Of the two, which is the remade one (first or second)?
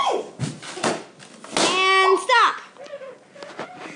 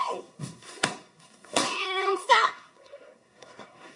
second